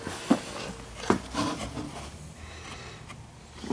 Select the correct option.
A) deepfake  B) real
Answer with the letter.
B